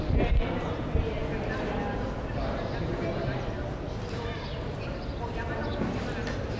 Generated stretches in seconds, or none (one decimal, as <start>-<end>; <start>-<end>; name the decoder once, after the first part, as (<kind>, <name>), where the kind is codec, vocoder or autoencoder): none